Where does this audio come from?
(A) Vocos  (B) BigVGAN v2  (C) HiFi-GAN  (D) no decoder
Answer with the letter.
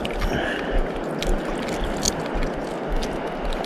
D